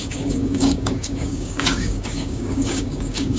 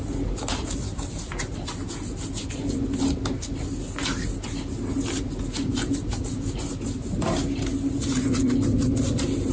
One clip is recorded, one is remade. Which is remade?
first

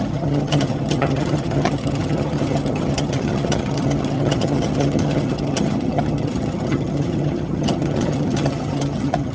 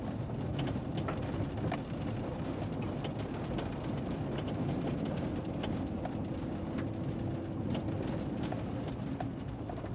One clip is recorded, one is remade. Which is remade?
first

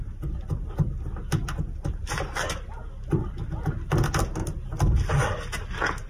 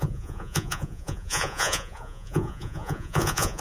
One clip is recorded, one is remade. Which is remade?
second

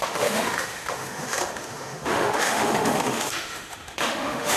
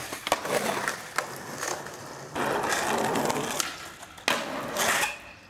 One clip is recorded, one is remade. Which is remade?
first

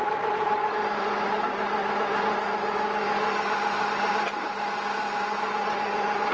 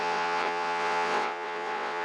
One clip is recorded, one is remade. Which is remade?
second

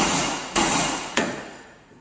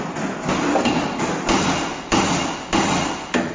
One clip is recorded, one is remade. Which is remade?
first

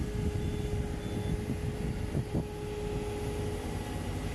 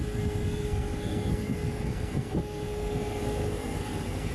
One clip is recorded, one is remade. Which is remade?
second